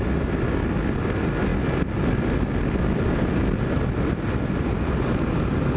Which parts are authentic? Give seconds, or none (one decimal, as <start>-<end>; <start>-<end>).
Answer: 0.0-5.8